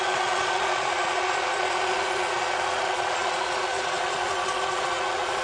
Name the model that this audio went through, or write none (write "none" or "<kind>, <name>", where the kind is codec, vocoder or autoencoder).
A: vocoder, Vocos